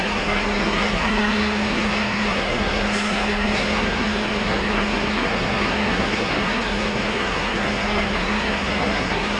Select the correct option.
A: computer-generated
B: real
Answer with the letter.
A